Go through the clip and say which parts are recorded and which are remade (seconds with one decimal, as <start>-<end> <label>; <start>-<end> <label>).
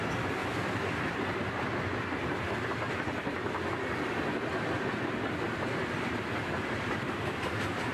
0.0-7.9 recorded